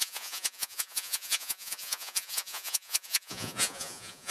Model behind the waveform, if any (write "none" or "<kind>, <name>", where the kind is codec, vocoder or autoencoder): vocoder, Vocos